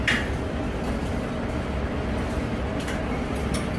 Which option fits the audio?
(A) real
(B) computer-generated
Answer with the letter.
A